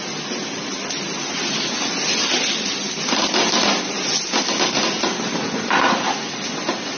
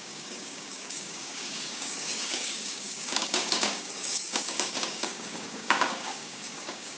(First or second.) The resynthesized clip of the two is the second